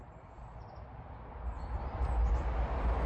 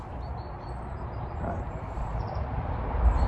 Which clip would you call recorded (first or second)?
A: first